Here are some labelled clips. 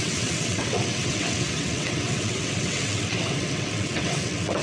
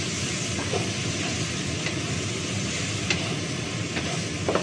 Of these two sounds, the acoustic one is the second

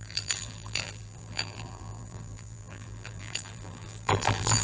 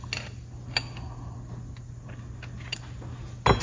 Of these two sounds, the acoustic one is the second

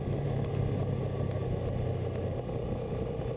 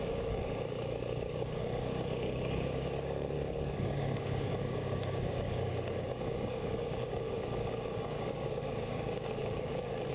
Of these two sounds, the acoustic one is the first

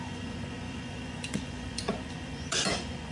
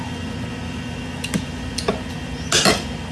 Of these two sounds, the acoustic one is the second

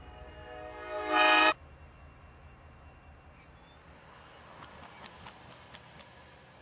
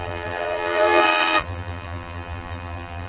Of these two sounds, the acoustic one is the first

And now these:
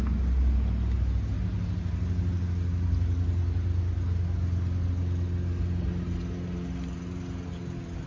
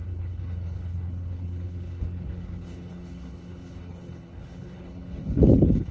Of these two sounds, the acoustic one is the first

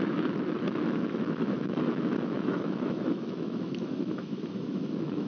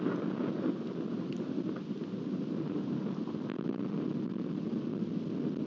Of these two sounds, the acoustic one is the second